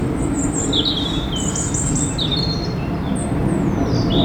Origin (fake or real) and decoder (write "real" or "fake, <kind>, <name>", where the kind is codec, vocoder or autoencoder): real